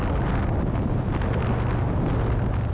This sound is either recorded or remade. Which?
recorded